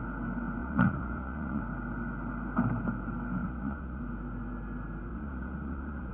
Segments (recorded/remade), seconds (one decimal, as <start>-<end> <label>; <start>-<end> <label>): 0.0-0.6 recorded; 0.6-1.6 remade; 1.6-3.4 recorded; 3.4-4.0 remade; 4.0-5.1 recorded; 5.1-6.1 remade